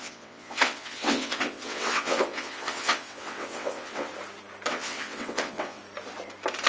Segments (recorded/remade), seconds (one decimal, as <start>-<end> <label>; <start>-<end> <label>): 0.0-4.1 remade; 4.1-4.7 recorded; 4.7-5.8 remade; 5.8-6.7 recorded